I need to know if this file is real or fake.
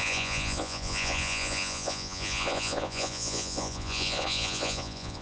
fake